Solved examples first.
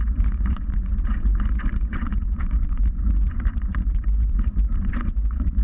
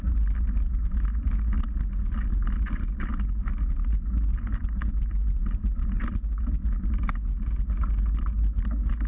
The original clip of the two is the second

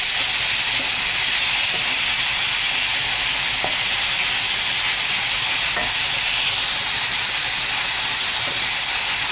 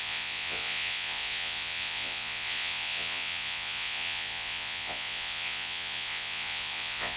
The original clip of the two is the first